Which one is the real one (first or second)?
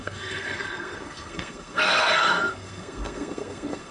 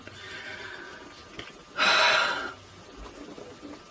second